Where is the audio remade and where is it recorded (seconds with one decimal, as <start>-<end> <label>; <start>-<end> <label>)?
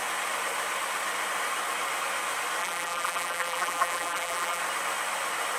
0.0-2.6 recorded; 2.6-4.6 remade; 4.6-5.6 recorded